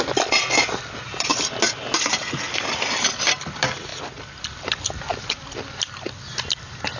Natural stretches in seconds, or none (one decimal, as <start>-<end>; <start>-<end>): 1.3-3.2; 3.9-7.0